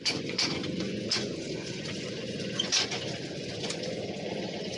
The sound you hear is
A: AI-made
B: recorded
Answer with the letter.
A